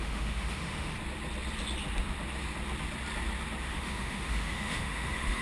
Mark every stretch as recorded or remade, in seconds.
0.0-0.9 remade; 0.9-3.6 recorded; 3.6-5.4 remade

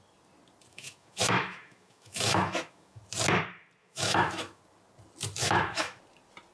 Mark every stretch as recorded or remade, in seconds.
0.0-0.7 recorded; 0.7-3.0 remade; 3.0-3.8 recorded; 3.8-4.6 remade; 4.6-5.4 recorded; 5.4-6.0 remade; 6.0-6.5 recorded